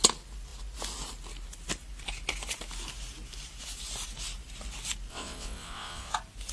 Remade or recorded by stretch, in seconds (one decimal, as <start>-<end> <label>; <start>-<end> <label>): 0.0-5.1 recorded; 5.1-6.1 remade; 6.1-6.5 recorded